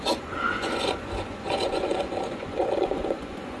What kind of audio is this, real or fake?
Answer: fake